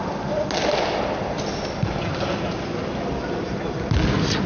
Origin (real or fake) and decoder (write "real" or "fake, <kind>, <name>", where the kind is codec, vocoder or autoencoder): real